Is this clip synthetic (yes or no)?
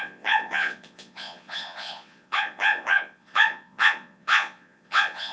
yes